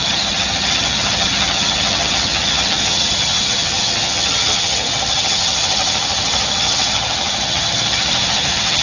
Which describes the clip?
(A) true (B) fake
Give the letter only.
B